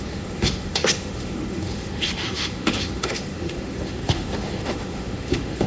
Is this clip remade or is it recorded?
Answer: remade